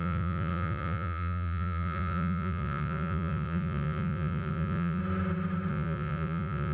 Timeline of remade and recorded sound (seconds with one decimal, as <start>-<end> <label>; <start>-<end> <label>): 0.0-5.0 remade; 5.0-5.7 recorded; 5.7-6.7 remade